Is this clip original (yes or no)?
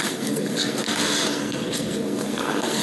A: no